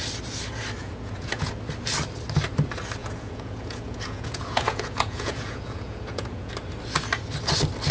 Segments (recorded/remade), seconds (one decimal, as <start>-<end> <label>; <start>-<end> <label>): 0.0-0.8 recorded; 0.8-1.5 remade; 1.5-3.0 recorded; 3.0-6.5 remade; 6.5-7.9 recorded